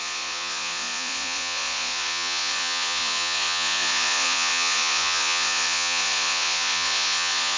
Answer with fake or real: fake